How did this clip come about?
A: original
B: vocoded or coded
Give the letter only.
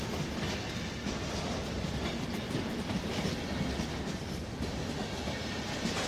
A